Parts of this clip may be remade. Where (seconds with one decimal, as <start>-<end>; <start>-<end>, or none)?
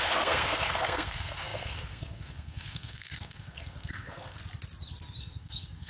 0.0-4.4; 5.2-5.9